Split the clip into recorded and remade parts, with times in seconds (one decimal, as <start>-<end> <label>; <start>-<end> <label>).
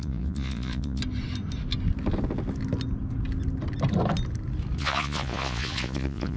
0.0-1.0 remade; 1.0-4.8 recorded; 4.8-6.4 remade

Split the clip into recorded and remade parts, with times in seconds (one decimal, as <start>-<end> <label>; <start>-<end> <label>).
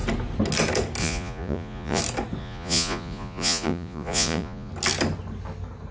0.0-1.0 recorded; 1.0-2.0 remade; 2.0-2.4 recorded; 2.4-4.7 remade; 4.7-5.9 recorded